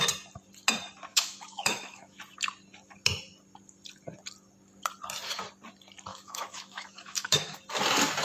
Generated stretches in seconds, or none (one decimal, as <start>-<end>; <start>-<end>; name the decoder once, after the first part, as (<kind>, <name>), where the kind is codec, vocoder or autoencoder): 1.1-2.2 (autoencoder, DAC-VAE); 6.1-7.6